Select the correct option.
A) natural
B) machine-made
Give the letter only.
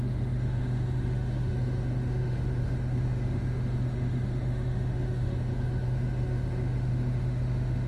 B